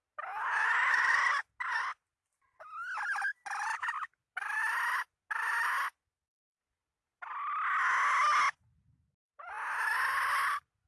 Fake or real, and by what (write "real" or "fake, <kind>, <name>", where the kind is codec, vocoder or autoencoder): real